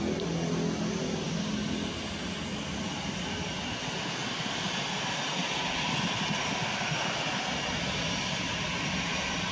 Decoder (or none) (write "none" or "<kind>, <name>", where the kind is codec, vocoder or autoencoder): none